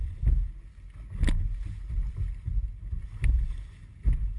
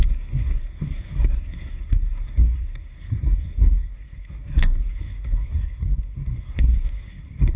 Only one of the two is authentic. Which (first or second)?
first